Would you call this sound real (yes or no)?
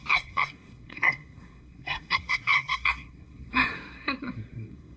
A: no